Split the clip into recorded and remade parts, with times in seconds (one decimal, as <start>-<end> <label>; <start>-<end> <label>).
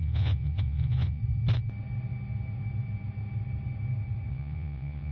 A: 0.0-1.2 remade; 1.2-4.3 recorded; 4.3-5.1 remade